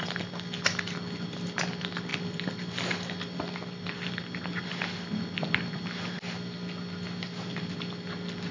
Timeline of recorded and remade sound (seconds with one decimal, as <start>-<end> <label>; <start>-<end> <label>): 0.0-8.5 recorded